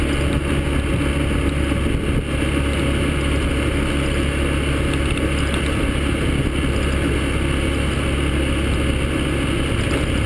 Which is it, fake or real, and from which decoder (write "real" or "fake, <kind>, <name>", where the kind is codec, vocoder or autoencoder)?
real